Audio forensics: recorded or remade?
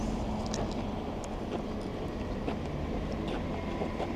recorded